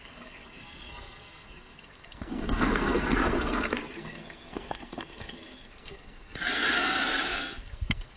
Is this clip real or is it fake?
fake